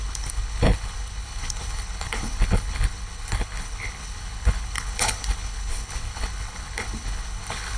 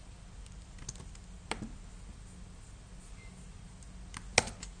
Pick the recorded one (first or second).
second